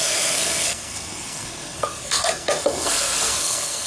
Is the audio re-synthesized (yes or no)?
yes